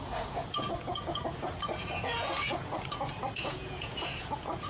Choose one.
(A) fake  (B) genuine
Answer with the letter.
A